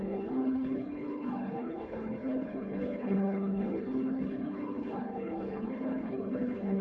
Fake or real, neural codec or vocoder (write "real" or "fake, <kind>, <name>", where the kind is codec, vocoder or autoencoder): fake, codec, HILCodec